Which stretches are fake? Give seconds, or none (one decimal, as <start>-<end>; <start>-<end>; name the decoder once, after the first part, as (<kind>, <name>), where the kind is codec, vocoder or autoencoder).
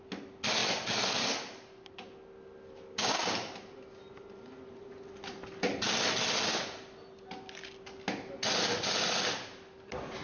none